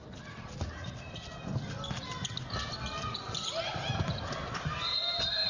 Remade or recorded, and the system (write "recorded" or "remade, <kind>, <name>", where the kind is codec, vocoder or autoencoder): recorded